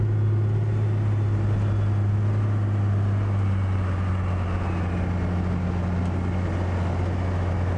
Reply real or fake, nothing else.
real